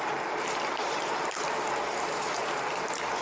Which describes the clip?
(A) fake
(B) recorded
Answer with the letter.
A